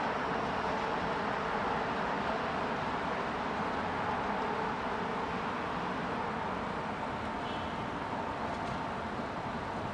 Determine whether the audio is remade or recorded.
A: recorded